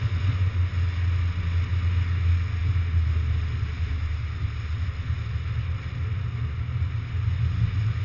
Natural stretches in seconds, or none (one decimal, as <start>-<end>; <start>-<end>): 0.0-8.0